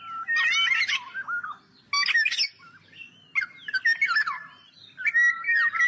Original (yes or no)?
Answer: yes